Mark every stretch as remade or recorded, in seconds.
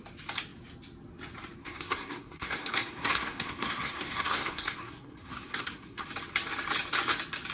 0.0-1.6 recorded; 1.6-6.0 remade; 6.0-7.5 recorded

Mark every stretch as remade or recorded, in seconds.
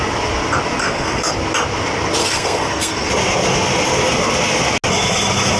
0.0-0.8 recorded; 0.8-1.3 remade; 1.3-2.2 recorded; 2.2-3.1 remade; 3.1-5.6 recorded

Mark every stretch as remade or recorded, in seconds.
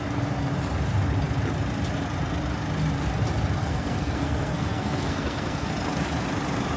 0.0-3.6 recorded; 3.6-5.7 remade; 5.7-6.8 recorded